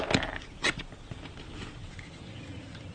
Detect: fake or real real